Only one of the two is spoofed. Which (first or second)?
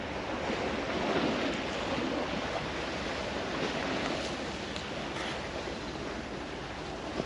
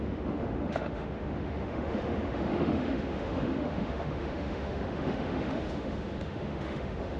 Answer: second